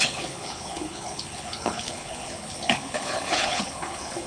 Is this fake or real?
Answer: fake